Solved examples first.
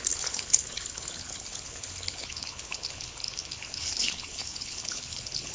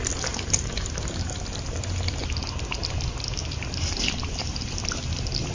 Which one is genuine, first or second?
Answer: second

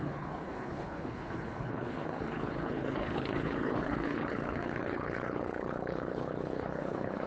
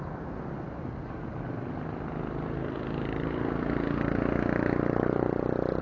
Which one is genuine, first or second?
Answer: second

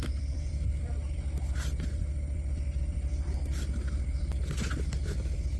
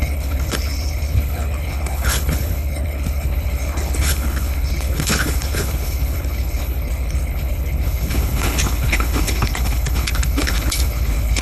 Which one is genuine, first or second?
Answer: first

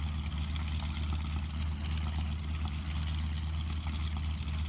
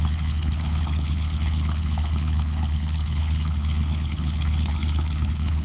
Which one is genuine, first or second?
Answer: first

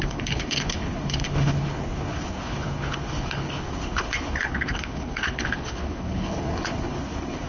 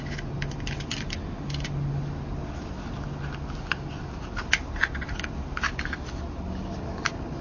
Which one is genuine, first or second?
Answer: second